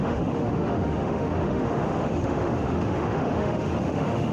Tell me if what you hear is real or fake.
fake